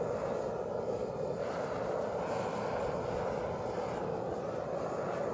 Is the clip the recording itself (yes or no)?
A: yes